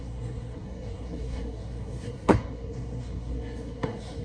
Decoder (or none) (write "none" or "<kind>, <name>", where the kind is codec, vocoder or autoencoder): codec, SNAC